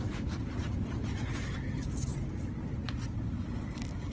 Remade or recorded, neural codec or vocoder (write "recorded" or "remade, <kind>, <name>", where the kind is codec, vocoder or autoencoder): recorded